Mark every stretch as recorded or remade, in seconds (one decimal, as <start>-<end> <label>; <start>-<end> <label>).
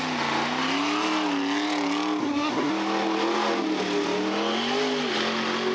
0.0-2.2 recorded; 2.2-2.7 remade; 2.7-5.7 recorded